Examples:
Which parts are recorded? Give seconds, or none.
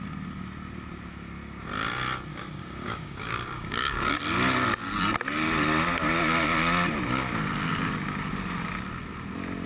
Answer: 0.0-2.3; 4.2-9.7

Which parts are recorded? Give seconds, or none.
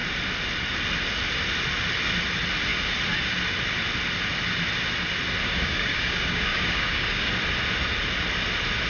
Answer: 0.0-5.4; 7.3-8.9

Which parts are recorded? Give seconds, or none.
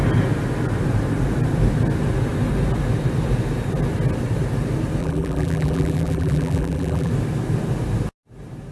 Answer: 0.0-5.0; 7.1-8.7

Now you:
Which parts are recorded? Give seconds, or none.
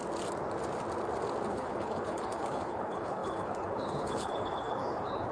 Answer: 0.0-1.5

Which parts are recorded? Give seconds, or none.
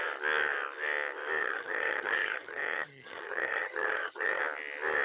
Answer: 0.0-1.4; 4.4-5.0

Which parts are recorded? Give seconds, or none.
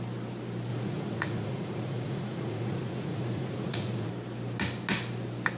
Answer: 0.0-0.7; 4.1-5.6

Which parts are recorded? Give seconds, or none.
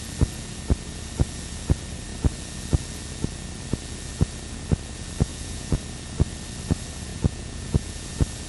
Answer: 0.0-5.3; 5.8-7.1; 8.1-8.5